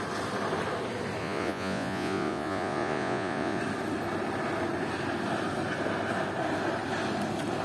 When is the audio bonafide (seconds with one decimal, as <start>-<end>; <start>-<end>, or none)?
0.0-1.2; 3.6-7.6